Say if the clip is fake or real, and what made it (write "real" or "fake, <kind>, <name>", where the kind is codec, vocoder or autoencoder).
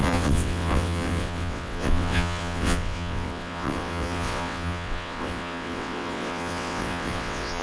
fake, vocoder, WaveNeXt